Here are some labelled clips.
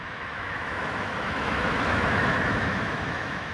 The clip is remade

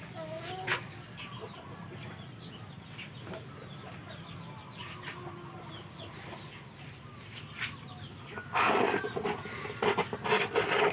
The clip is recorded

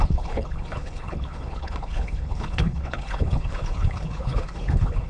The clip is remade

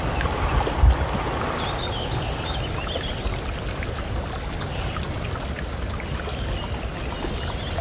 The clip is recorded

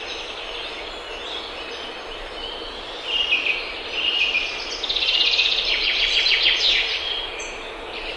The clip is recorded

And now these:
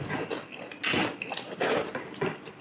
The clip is recorded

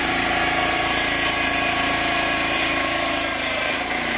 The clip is remade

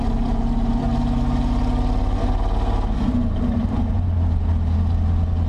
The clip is recorded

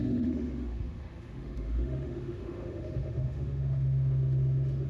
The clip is remade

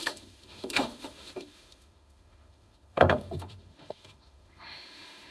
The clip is remade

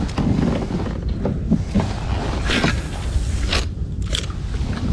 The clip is recorded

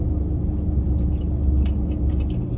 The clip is recorded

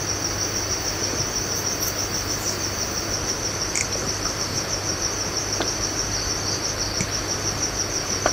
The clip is recorded